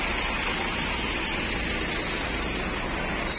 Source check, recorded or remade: recorded